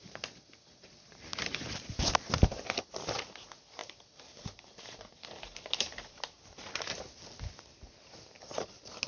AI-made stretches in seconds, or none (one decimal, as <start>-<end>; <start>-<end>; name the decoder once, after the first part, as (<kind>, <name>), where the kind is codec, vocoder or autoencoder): none